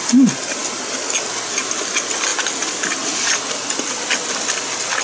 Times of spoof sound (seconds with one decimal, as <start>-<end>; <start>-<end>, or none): none